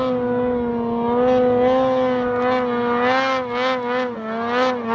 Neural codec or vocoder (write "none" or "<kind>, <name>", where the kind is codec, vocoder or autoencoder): none